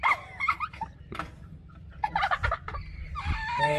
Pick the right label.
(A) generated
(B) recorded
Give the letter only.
B